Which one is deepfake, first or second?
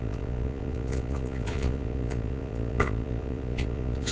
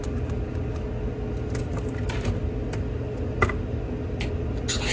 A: first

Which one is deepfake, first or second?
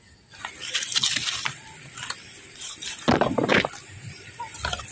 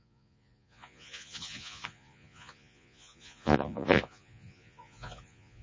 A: second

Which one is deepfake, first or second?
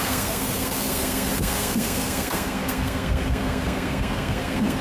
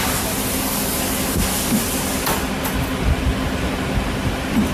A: first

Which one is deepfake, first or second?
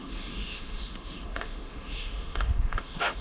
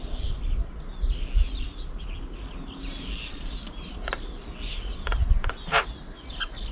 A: first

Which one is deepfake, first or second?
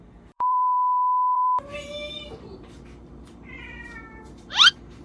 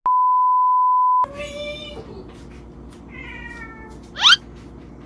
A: first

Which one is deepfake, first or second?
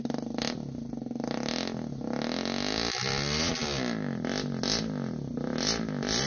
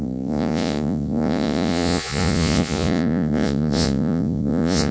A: second